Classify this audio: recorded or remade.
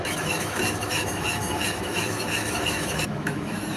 remade